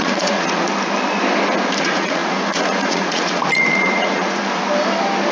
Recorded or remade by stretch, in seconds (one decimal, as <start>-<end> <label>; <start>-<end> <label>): 0.0-0.7 remade; 0.7-1.8 recorded; 1.8-4.4 remade; 4.4-5.3 recorded